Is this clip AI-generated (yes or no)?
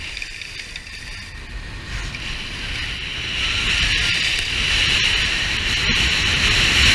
no